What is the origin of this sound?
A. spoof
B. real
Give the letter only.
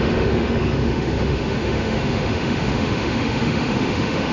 A